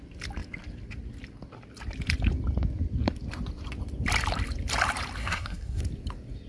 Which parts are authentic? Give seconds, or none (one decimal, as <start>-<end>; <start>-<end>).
0.0-5.2; 5.8-6.5